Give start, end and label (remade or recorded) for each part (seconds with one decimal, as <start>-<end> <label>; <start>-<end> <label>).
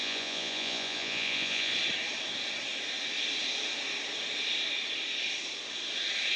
0.0-1.7 remade; 1.7-6.4 recorded